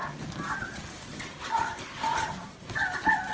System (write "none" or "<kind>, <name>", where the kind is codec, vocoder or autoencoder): vocoder, BigVGAN v2